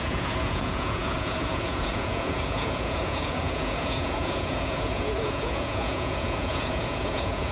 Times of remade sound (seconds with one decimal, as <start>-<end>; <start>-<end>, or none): 0.0-7.5